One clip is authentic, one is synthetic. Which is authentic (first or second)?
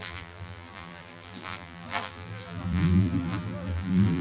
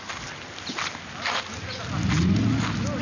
second